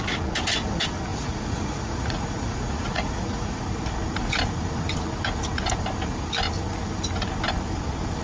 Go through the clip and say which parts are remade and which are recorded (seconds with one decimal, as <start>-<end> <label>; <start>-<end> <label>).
0.0-1.1 recorded; 1.1-3.6 remade; 3.6-8.2 recorded